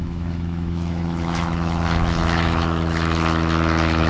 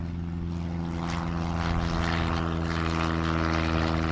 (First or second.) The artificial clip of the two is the first